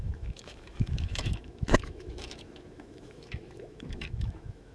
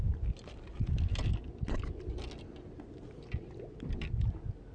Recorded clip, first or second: second